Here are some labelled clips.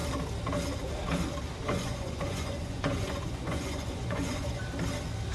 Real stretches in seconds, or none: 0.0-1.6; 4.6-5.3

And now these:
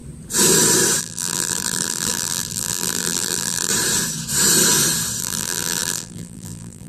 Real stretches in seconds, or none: 0.0-1.0; 3.7-5.2

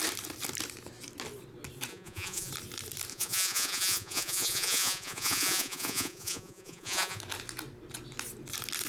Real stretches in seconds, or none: 0.0-1.9; 2.5-3.1; 7.2-8.9

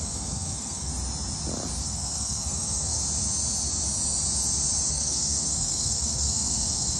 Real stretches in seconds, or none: 0.9-1.8; 3.0-4.9

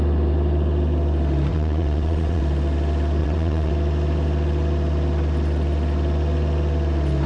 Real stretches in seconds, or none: 0.0-1.5; 2.4-3.2; 3.7-7.3

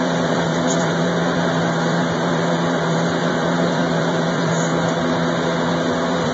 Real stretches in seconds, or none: 4.7-5.7